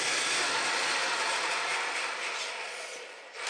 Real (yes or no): yes